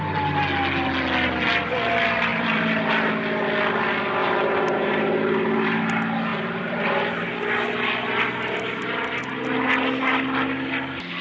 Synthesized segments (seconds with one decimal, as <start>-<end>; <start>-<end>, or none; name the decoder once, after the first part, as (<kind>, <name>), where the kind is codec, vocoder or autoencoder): 2.3-3.1 (vocoder, BigVGAN v2); 4.2-5.8; 6.3-7.3